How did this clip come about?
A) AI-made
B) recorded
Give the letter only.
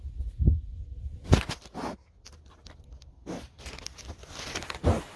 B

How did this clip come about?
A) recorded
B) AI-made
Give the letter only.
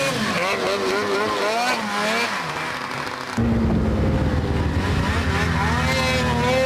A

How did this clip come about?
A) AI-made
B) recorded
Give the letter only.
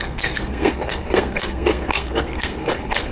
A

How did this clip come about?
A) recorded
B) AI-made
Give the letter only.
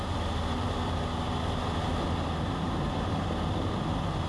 A